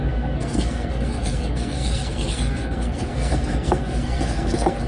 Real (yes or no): no